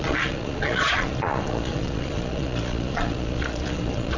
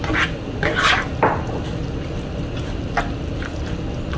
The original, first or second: second